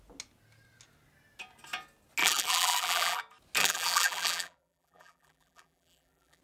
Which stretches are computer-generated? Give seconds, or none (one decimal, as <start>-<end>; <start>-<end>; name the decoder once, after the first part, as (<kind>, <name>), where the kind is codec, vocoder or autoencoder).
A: 2.2-3.2 (vocoder, BigVGAN v2); 3.6-6.4